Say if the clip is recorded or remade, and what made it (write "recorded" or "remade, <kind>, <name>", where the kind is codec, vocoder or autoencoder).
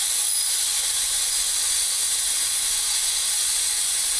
remade, vocoder, Vocos